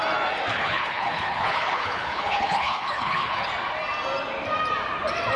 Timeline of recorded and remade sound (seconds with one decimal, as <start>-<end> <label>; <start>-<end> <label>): 0.0-0.5 recorded; 0.5-3.5 remade; 3.5-5.4 recorded